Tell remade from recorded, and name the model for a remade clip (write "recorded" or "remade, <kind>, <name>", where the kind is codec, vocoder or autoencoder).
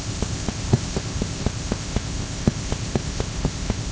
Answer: remade, codec, ZipCodec